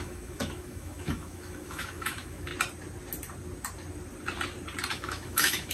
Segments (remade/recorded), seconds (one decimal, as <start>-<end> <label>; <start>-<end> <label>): 0.0-2.5 remade; 2.5-4.9 recorded; 4.9-5.7 remade